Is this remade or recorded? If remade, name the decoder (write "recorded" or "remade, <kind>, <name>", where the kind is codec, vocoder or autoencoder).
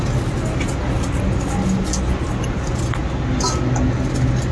recorded